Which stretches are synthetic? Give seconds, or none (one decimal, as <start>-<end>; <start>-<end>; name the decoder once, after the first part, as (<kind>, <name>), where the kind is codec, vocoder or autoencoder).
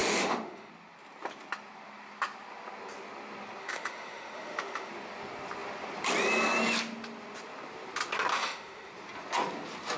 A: 0.0-0.7 (autoencoder, DAC-VAE); 3.6-4.9; 8.3-8.9